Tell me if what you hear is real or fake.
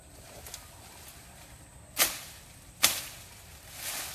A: real